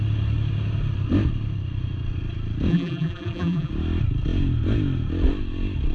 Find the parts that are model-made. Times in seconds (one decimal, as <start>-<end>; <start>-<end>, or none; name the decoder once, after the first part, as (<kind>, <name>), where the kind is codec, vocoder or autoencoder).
2.7-3.7 (vocoder, BigVGAN v2)

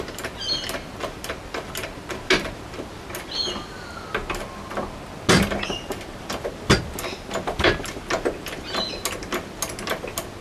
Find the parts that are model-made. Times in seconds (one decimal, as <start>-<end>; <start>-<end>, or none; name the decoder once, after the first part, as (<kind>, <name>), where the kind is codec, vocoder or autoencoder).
none

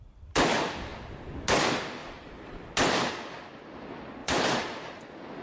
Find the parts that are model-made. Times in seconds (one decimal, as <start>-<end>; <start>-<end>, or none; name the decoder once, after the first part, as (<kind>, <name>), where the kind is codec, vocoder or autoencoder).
2.0-2.6 (vocoder, BigVGAN v2); 4.2-5.0